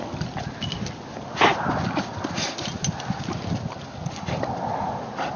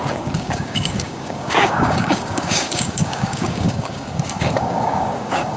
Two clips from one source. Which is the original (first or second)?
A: first